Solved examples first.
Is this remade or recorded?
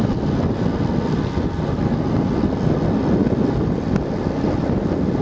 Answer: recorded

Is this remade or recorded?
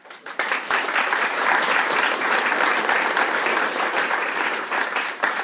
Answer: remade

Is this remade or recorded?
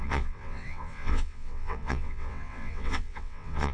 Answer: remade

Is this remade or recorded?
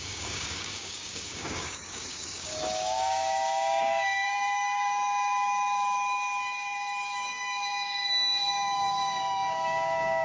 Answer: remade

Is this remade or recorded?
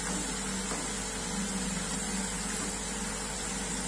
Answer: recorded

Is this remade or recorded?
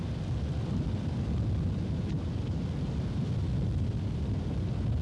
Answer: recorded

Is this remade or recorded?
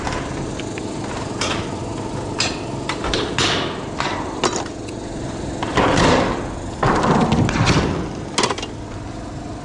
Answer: recorded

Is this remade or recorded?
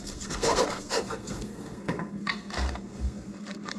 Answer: remade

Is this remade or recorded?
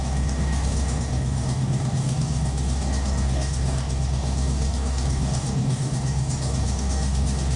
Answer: remade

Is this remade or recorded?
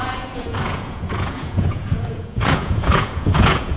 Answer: remade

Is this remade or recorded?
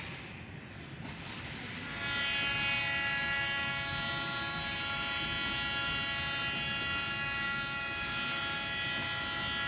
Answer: recorded